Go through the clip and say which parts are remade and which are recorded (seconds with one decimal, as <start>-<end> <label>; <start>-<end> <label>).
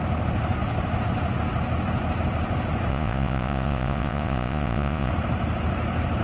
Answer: 0.0-2.9 recorded; 2.9-5.1 remade; 5.1-6.2 recorded